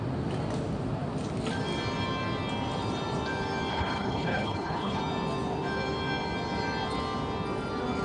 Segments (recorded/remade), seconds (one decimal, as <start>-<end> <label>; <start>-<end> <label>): 0.0-3.7 recorded; 3.7-5.0 remade; 5.0-8.0 recorded